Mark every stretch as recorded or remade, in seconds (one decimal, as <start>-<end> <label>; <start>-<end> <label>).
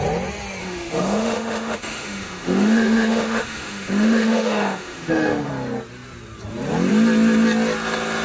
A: 0.0-0.6 recorded; 0.6-5.5 remade; 5.5-8.2 recorded